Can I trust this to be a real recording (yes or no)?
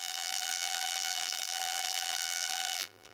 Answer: no